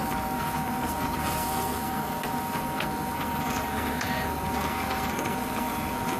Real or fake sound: fake